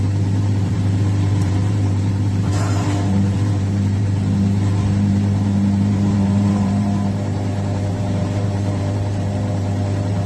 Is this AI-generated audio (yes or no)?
yes